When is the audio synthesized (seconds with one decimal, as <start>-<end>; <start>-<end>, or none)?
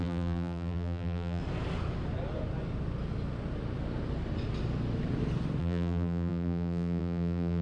0.0-1.4; 5.6-7.6